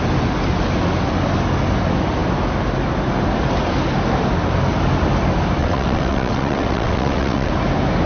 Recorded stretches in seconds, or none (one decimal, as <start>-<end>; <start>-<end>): 0.0-5.6; 7.5-8.1

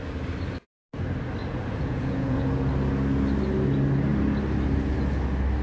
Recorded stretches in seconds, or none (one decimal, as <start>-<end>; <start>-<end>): 0.0-1.4; 2.7-5.6

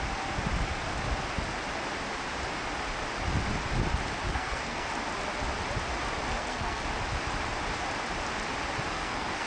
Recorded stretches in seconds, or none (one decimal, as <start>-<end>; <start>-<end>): 0.0-4.3; 4.9-6.3; 6.8-8.9

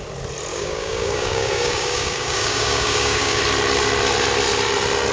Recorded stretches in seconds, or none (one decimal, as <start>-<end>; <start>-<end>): 0.0-0.5; 3.4-5.1